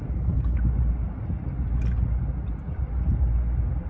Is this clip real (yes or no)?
yes